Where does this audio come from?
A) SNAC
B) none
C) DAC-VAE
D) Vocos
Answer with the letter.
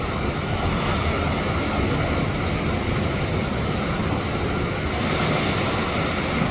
B